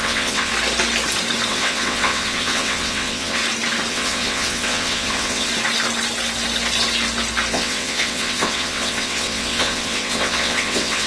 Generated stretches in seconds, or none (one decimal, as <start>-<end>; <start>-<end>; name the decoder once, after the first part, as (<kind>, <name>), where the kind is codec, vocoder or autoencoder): 0.0-0.5 (vocoder, WaveNeXt); 1.5-3.4; 3.9-5.5; 7.5-11.1